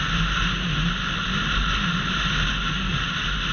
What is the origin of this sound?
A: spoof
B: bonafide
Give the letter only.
B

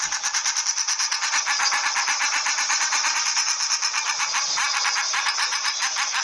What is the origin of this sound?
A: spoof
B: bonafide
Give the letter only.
A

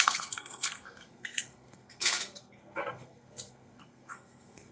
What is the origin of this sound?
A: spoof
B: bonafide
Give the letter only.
A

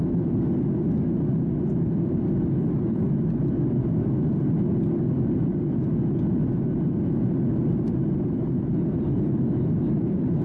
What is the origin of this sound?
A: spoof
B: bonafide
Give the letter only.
B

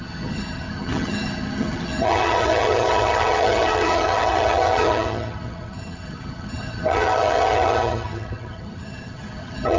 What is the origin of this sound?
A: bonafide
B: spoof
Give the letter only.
B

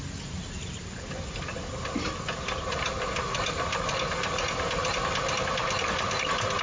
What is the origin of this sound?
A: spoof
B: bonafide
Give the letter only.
B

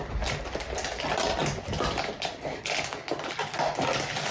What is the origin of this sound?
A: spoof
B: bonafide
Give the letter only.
B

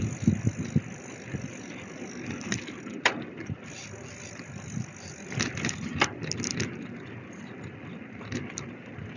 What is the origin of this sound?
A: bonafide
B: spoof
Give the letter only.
A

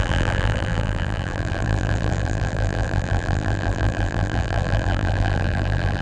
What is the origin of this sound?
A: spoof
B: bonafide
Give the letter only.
A